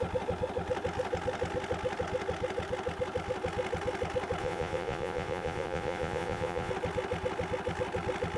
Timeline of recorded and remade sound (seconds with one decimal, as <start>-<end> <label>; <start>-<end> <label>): 0.0-4.4 recorded; 4.4-6.7 remade; 6.7-8.4 recorded